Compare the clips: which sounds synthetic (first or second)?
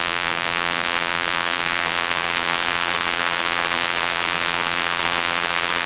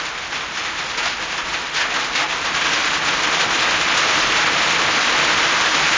first